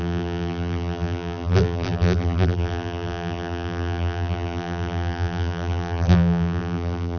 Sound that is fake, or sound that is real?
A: fake